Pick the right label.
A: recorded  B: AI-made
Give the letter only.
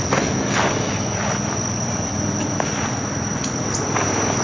A